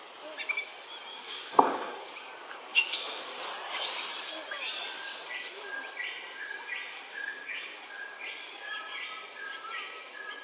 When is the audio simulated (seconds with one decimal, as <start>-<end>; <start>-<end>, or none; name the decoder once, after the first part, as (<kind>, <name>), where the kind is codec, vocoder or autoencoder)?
1.1-2.0 (codec, DAC); 2.7-3.4; 7.1-7.7